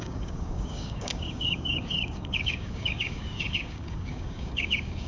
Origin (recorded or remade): remade